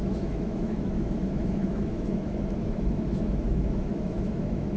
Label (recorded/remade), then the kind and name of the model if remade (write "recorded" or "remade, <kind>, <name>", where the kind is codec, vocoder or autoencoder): remade, autoencoder, DAC-VAE